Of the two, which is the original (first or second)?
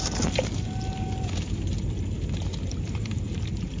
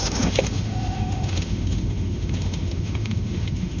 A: first